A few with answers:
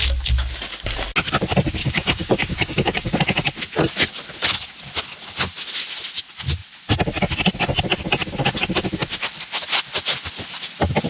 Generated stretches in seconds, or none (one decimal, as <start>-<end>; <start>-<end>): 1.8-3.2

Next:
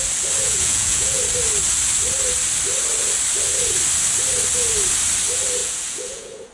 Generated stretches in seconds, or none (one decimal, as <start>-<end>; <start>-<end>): 0.4-1.2; 5.6-6.5

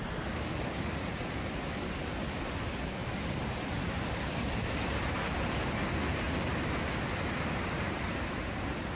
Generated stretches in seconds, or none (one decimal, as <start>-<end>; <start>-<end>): none

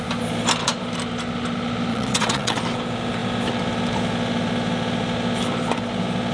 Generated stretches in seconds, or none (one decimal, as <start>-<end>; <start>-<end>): 1.9-2.6

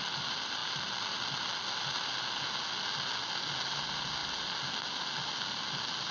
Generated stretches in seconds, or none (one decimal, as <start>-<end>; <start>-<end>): none

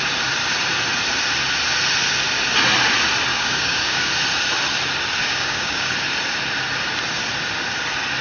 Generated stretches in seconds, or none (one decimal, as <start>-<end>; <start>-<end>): 3.3-4.1; 5.2-5.9